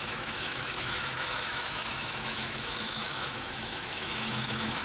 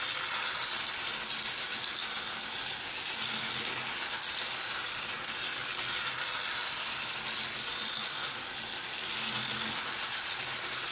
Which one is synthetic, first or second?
first